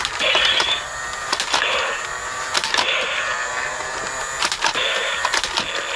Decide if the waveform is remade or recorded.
recorded